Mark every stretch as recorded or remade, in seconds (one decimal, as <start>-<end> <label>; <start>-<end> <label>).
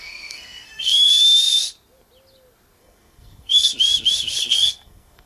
0.0-1.1 remade; 1.1-2.8 recorded; 2.8-3.7 remade; 3.7-4.4 recorded; 4.4-5.3 remade